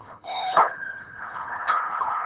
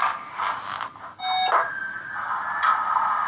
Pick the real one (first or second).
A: second